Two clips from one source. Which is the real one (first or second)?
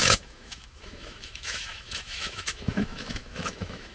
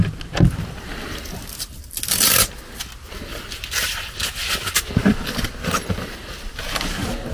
second